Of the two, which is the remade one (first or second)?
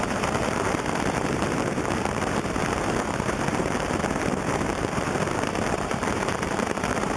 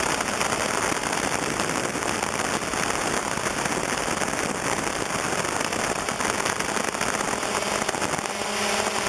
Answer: first